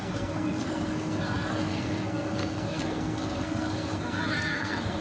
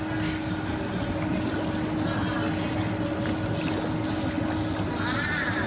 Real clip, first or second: second